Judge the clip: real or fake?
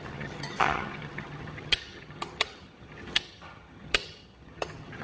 fake